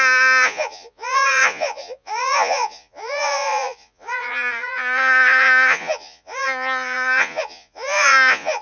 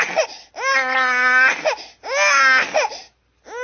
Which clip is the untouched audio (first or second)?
second